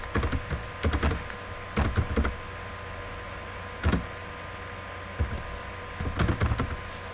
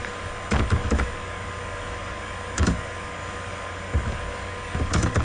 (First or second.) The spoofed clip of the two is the second